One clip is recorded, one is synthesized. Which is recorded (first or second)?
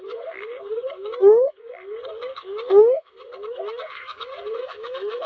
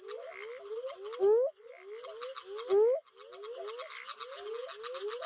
second